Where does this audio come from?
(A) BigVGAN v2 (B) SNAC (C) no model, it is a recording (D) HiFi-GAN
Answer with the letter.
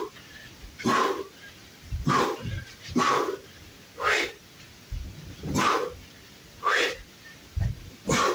C